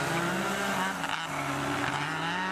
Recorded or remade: recorded